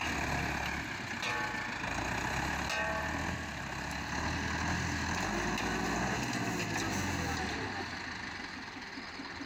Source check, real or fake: real